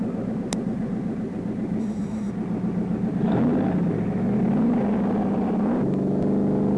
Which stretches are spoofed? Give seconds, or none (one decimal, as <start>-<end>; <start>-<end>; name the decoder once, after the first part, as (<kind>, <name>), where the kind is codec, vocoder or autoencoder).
1.8-2.3 (codec, SNAC)